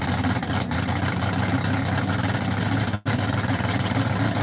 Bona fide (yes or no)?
yes